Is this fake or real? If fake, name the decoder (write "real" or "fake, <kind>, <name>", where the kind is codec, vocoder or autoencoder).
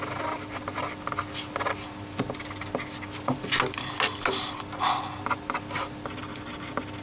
real